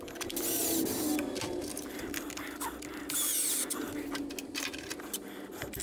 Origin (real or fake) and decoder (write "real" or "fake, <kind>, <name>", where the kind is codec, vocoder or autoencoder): real